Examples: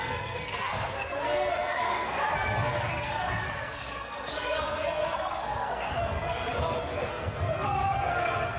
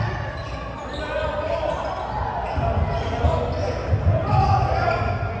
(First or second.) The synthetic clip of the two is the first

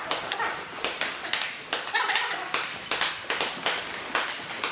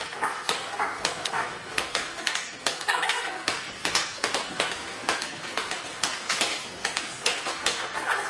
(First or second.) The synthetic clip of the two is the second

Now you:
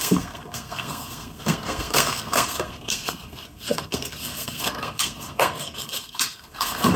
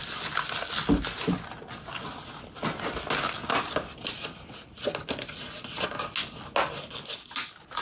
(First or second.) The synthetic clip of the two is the first